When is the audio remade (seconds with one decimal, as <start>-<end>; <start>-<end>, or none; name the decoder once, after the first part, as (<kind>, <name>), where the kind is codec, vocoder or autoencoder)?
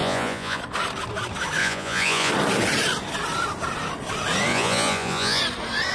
0.0-0.6 (vocoder, Vocos); 1.6-2.3; 4.5-5.4